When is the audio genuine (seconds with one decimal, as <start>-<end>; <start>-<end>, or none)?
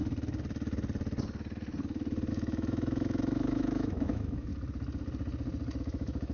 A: 0.0-2.3; 4.5-5.8